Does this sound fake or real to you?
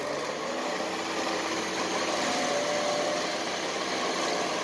real